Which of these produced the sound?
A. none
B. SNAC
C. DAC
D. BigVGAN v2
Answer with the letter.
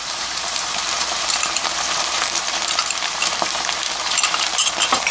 D